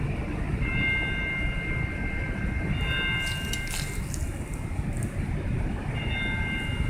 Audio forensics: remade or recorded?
recorded